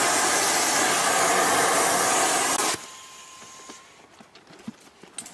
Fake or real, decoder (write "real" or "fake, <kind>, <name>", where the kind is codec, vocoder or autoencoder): real